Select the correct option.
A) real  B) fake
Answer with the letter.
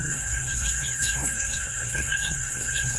B